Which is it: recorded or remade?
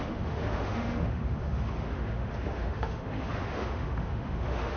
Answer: remade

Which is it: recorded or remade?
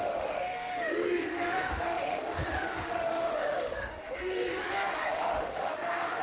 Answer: remade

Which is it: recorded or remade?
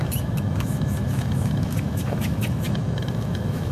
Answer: remade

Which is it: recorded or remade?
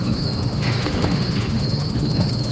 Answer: remade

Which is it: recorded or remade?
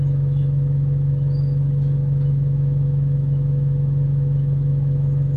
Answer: remade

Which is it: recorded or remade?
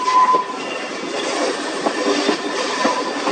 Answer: recorded